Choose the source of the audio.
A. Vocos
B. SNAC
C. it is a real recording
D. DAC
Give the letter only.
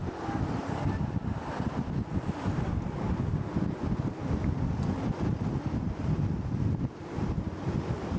C